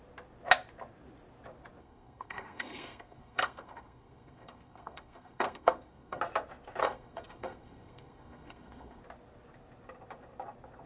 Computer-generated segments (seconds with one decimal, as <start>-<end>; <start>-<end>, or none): 1.8-6.2; 6.8-9.0

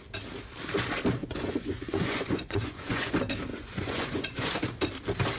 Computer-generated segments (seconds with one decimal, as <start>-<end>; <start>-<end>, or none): 1.2-3.1; 3.5-4.6